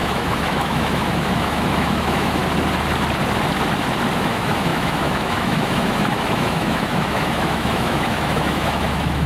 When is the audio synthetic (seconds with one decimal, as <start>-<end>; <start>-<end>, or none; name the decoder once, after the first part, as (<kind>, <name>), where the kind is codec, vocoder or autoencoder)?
0.0-2.4 (autoencoder, DAC-VAE); 4.2-9.3